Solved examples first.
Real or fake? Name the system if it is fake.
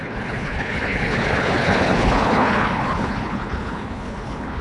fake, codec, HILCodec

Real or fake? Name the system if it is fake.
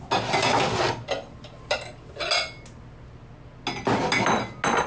real